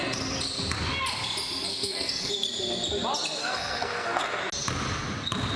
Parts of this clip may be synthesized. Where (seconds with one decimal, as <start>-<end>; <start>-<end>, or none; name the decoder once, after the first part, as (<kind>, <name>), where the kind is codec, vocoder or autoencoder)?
1.7-2.3 (codec, SNAC); 3.4-4.4